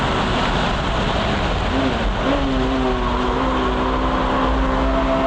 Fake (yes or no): no